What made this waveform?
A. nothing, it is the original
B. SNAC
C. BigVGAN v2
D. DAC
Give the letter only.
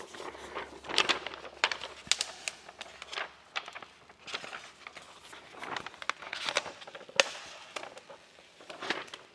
A